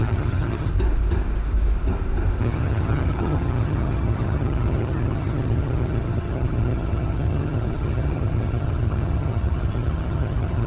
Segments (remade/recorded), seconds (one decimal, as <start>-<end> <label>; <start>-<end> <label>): 0.0-0.7 remade; 0.7-2.4 recorded; 2.4-10.7 remade